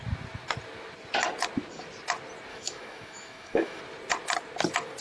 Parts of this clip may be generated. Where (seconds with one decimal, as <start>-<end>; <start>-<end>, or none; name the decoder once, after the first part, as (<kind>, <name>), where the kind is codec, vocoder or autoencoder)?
2.5-3.8 (autoencoder, DAC-VAE)